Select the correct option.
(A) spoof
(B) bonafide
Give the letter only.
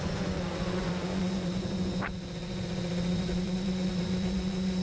A